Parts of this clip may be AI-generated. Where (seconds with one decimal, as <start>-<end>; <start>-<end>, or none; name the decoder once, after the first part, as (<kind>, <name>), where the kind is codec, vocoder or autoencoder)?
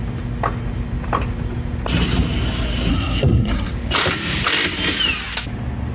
2.9-3.7 (codec, SNAC)